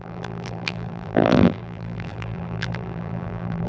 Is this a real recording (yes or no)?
no